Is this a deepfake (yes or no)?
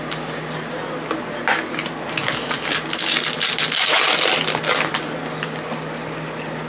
no